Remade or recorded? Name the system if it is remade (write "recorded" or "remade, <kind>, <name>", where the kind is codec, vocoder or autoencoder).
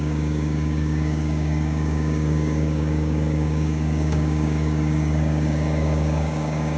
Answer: remade, codec, DAC